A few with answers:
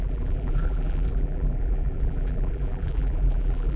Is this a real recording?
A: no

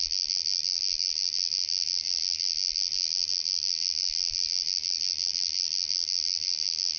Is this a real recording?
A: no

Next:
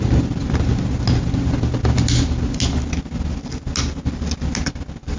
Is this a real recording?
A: yes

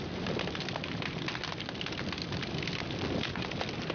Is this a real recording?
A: yes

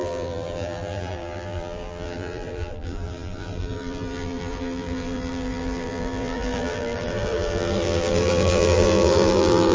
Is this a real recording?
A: no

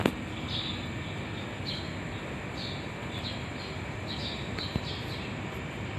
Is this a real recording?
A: yes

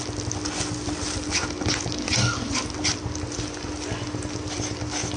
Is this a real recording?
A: yes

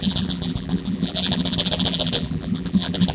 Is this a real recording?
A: no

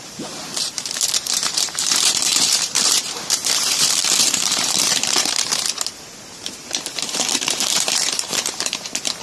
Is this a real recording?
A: no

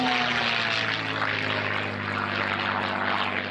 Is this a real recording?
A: yes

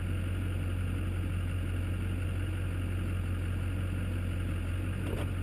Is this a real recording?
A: yes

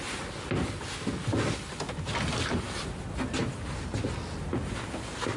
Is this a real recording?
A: yes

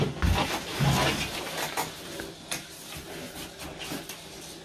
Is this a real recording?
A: yes